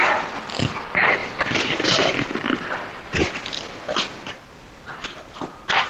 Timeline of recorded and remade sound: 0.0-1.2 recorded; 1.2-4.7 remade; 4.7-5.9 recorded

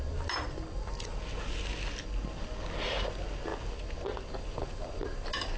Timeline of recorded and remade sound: 0.0-5.6 recorded

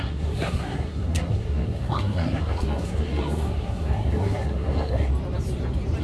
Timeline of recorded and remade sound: 0.0-5.1 remade; 5.1-6.0 recorded

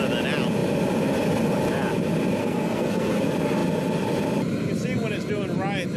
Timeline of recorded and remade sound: 0.0-2.4 recorded; 2.4-3.2 remade; 3.2-6.0 recorded

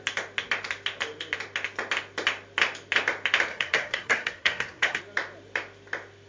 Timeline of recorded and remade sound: 0.0-3.5 recorded; 3.5-5.0 remade; 5.0-6.3 recorded

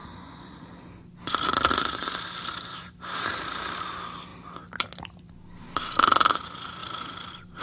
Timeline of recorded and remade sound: 0.0-0.7 remade; 0.7-7.6 recorded

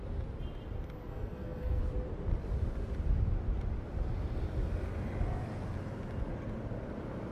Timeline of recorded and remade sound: 0.0-1.1 recorded; 1.1-1.8 remade; 1.8-7.3 recorded